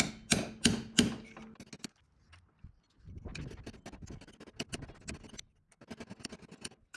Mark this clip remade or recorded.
recorded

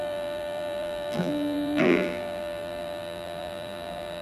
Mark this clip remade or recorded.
remade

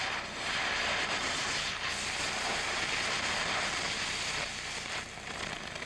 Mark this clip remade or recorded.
recorded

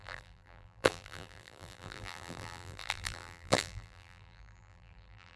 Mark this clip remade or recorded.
remade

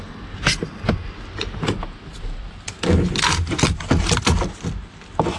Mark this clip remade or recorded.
recorded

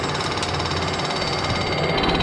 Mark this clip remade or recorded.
recorded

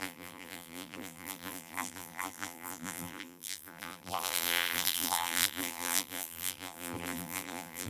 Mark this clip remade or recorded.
remade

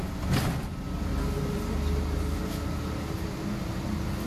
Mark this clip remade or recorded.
recorded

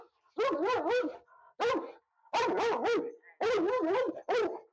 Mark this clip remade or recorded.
recorded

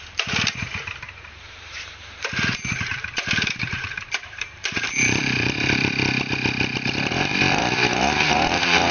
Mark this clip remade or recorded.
remade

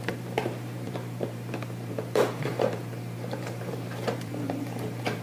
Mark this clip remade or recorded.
remade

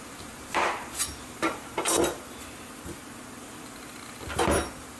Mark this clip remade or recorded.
remade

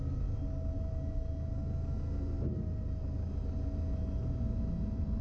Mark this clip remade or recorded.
recorded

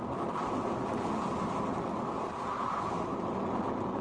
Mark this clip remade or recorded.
recorded